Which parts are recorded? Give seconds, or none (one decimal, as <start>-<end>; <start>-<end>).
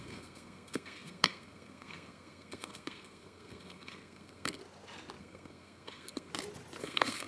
4.6-5.2; 6.3-6.8